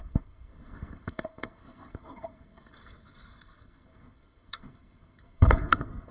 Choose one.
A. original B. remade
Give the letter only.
B